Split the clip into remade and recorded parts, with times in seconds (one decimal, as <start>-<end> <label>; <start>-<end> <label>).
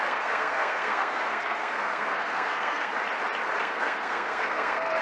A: 0.0-2.9 remade; 2.9-3.6 recorded; 3.6-5.0 remade